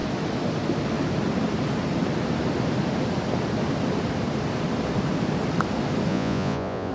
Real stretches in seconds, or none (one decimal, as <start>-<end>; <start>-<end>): 0.0-6.1